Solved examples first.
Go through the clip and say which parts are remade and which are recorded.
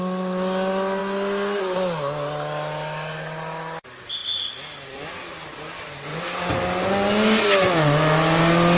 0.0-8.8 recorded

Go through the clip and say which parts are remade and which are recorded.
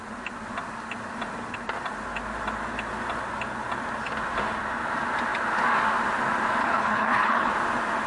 0.0-6.6 recorded; 6.6-7.5 remade; 7.5-8.1 recorded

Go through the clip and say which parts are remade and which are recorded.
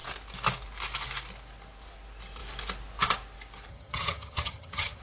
0.0-3.7 recorded; 3.7-5.0 remade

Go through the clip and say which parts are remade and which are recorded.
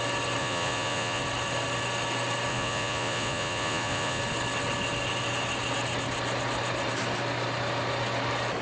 0.0-0.4 recorded; 0.4-1.2 remade; 1.2-2.5 recorded; 2.5-4.2 remade; 4.2-8.6 recorded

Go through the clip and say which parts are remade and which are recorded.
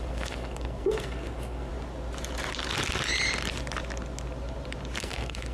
0.0-1.7 remade; 1.7-5.0 recorded; 5.0-5.5 remade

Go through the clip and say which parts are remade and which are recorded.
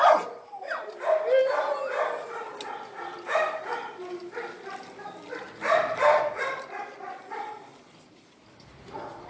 0.0-9.3 recorded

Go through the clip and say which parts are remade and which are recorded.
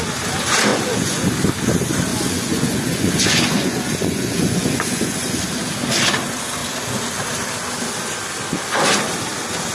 0.0-0.7 recorded; 0.7-1.3 remade; 1.3-2.1 recorded; 2.1-5.4 remade; 5.4-9.7 recorded